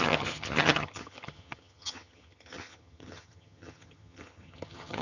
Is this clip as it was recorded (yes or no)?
no